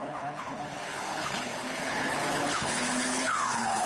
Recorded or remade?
remade